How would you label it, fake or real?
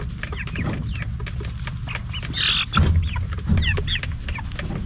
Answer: real